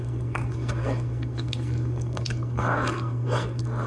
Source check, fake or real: fake